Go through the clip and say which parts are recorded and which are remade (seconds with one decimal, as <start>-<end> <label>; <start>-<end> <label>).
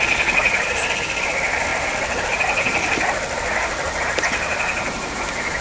0.0-5.6 recorded